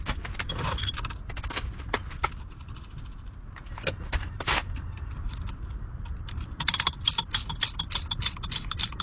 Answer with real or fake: real